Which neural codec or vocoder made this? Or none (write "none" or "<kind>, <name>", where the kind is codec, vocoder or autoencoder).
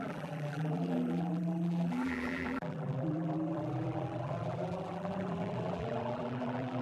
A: vocoder, BigVGAN v2